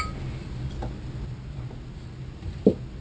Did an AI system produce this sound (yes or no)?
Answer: no